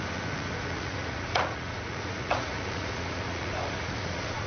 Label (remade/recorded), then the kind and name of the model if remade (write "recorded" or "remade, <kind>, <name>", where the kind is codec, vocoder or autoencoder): remade, vocoder, Vocos